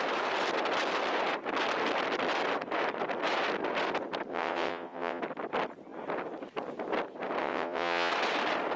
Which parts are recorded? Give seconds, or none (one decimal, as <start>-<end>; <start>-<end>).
0.0-4.3; 5.2-7.4; 8.1-8.8